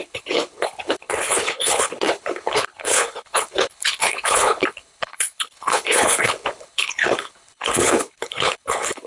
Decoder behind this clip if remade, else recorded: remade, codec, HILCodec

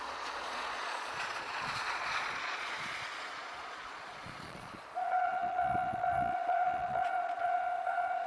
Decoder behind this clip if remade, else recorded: remade, vocoder, Vocos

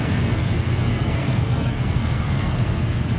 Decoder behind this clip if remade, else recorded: remade, codec, SNAC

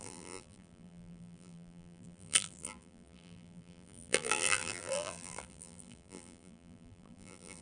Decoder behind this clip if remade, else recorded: remade, vocoder, BigVGAN v2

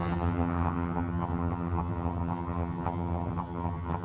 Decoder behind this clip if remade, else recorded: remade, vocoder, HiFi-GAN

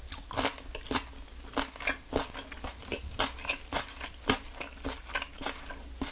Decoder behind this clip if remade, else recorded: recorded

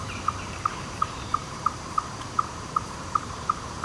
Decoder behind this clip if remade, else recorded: remade, vocoder, BigVGAN v2